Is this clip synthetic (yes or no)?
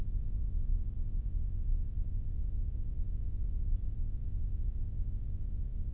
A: no